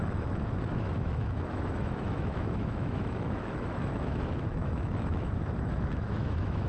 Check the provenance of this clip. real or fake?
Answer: fake